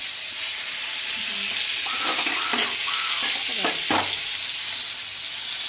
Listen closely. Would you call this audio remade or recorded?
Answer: recorded